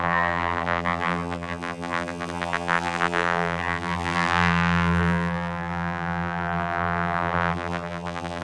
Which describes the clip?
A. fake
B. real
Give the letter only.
A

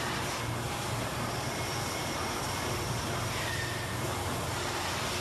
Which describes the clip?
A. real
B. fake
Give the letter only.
A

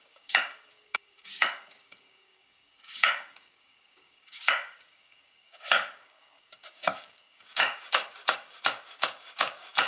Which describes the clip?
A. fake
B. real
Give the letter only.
A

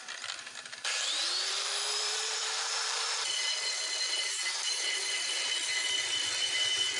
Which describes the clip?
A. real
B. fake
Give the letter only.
B